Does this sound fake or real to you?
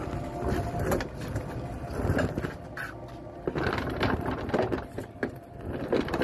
real